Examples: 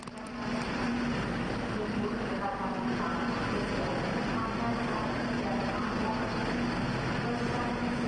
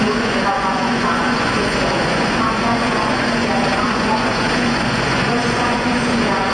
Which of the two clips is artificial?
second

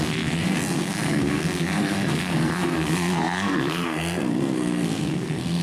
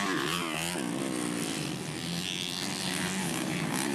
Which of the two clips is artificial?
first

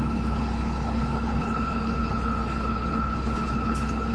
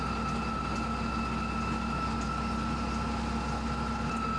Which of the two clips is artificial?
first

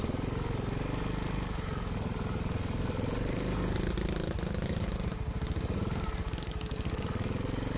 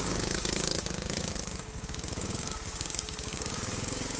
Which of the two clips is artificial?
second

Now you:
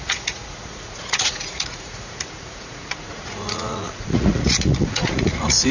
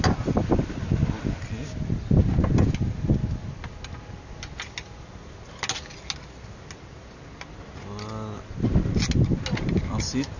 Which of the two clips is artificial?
first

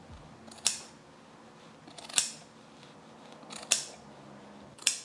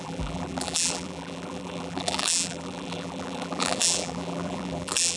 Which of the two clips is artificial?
second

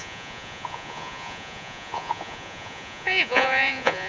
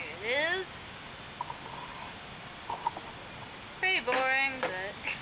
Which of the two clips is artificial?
first